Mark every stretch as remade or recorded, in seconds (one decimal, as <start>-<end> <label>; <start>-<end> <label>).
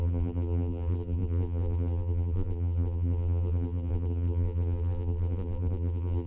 0.0-6.3 remade